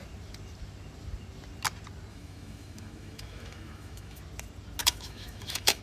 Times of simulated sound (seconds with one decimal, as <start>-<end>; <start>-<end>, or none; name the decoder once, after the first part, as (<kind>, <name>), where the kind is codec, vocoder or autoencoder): 2.1-4.2 (autoencoder, DAC-VAE); 4.8-5.8